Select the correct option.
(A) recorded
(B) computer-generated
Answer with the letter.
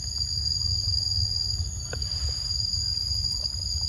A